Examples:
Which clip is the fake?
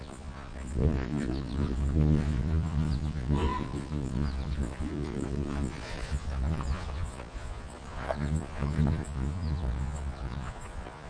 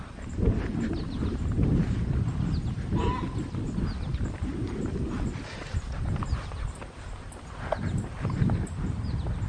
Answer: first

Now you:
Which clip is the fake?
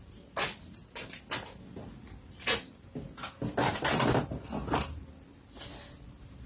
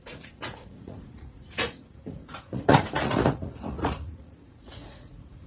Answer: second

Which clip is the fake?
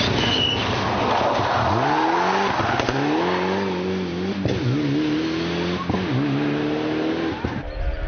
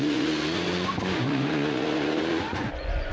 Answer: second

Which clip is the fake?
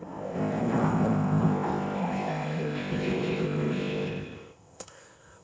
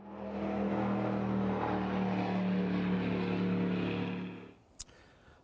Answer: first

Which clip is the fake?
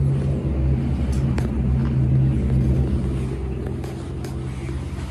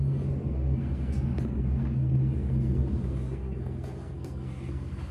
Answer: second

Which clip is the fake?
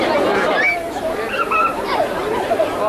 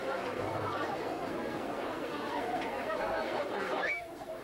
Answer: second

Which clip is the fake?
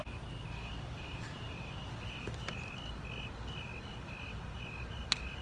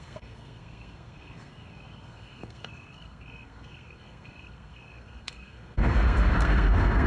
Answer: second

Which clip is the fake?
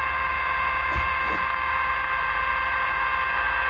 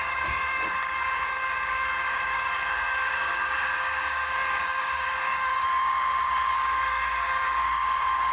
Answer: second